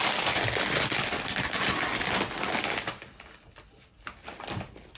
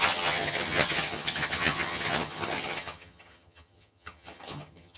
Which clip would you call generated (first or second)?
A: second